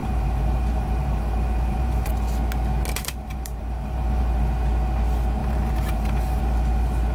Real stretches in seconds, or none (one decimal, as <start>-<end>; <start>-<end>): 2.1-2.9; 4.2-5.4; 6.4-7.1